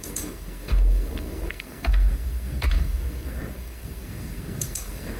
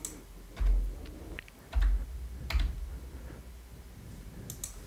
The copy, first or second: first